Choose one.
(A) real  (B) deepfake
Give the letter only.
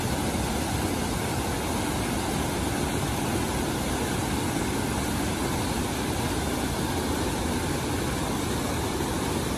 A